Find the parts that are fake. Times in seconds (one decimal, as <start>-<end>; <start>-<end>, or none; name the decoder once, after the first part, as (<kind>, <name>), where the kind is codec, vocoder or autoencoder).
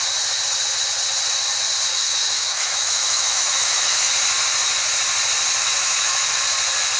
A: 1.9-4.1 (autoencoder, DAC-VAE); 5.6-6.4